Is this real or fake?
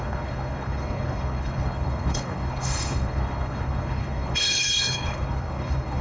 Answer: fake